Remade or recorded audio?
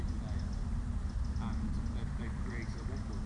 recorded